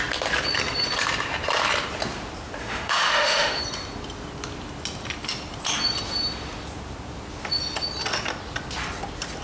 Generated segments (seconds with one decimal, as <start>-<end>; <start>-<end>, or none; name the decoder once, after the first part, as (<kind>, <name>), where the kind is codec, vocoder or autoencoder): 2.6-3.6 (autoencoder, DAC-VAE)